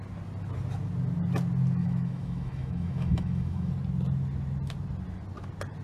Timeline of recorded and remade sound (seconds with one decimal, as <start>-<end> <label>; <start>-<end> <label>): 0.0-1.8 recorded; 1.8-3.7 remade; 3.7-5.8 recorded